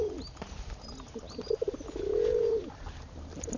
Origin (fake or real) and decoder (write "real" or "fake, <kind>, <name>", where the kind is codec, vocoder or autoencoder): real